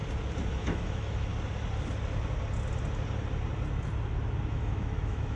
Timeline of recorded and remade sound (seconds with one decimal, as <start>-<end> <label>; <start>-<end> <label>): 0.0-0.5 recorded; 0.5-1.3 remade; 1.3-4.5 recorded; 4.5-5.4 remade